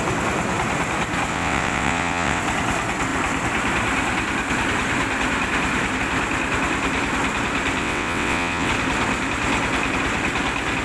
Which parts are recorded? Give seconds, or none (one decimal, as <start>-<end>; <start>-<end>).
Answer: 0.0-1.3; 2.4-7.8; 8.7-10.8